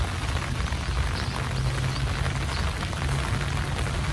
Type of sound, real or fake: real